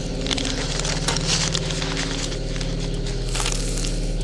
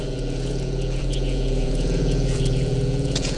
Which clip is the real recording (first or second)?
first